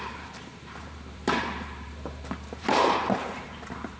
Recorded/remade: remade